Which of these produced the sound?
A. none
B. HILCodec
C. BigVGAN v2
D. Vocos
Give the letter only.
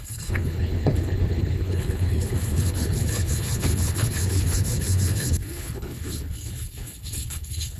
B